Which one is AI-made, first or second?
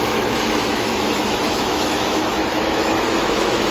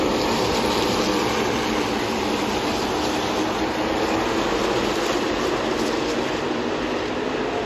first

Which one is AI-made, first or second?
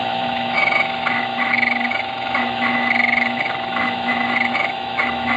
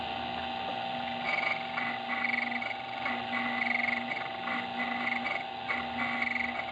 first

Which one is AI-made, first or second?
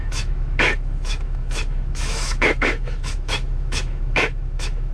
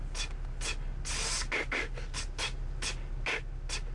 first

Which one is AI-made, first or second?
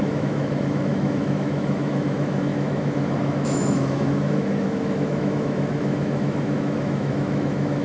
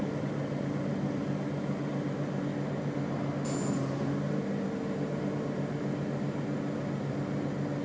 first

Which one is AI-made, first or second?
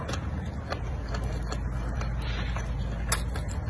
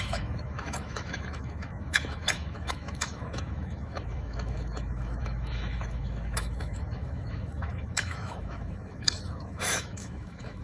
second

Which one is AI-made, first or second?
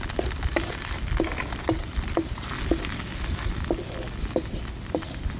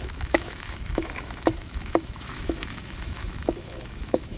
second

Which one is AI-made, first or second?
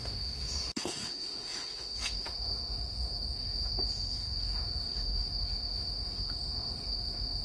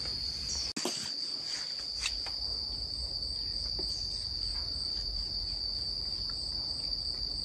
first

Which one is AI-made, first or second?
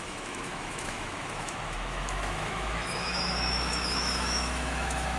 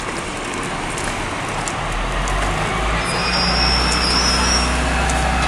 first